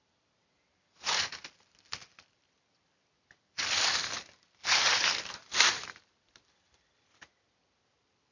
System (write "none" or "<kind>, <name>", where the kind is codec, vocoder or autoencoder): vocoder, BigVGAN v2